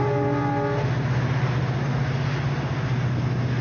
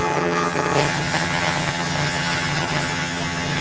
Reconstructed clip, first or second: second